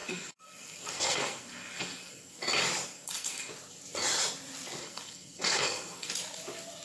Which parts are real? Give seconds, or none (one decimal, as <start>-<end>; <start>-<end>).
2.4-2.9; 3.5-4.8; 6.1-6.8